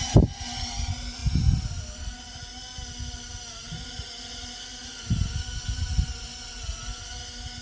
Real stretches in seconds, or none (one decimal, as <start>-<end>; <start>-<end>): 0.0-7.6